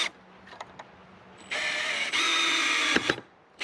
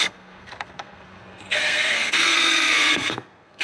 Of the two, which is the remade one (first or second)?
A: second